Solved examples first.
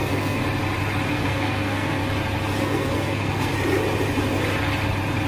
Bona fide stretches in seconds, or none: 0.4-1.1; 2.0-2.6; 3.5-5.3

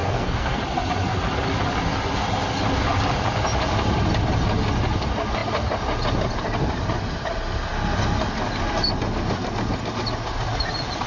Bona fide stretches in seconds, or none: 0.6-11.1

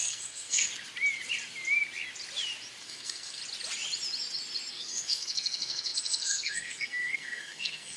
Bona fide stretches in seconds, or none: 0.7-2.8; 3.4-4.7

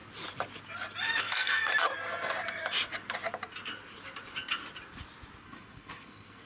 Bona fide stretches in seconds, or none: 0.0-1.2; 1.7-5.4

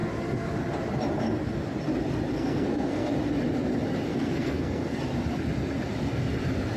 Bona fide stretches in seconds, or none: 0.0-2.3; 3.1-4.1; 5.0-6.8

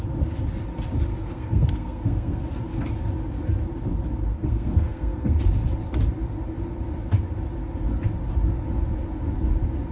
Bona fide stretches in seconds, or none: 0.0-1.1; 2.4-4.3; 5.4-9.9

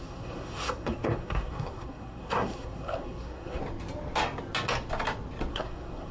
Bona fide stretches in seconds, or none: 3.6-5.5

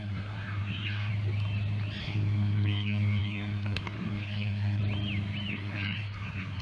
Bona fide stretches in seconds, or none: 1.1-2.0; 4.8-5.5